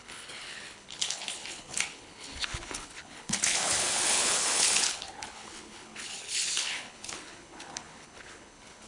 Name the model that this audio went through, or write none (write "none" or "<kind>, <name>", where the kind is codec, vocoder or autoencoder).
codec, HILCodec